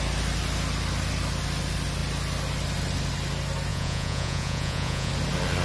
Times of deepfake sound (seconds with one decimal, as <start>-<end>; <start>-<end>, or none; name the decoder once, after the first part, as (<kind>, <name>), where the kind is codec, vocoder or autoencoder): 3.7-5.1 (vocoder, Vocos)